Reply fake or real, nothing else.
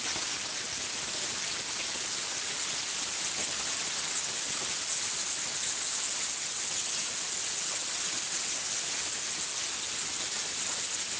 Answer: real